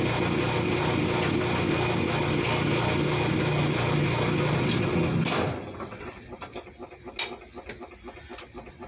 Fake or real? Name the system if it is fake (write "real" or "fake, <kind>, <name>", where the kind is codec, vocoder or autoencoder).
real